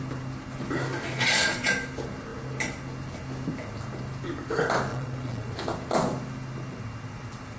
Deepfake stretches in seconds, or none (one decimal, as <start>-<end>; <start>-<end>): 1.1-1.7; 4.9-5.5